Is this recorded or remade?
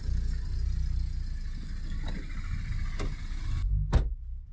recorded